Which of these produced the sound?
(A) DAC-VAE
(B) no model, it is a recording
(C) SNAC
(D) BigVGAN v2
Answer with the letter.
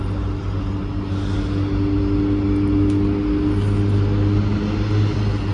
B